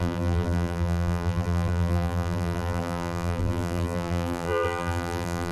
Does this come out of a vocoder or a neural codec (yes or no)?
yes